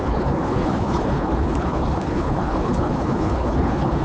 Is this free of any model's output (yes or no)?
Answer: no